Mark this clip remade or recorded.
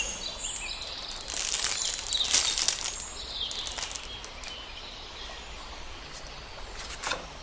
recorded